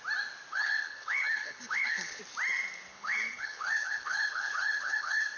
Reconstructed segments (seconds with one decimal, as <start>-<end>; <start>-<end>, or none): 0.5-2.2; 2.9-5.4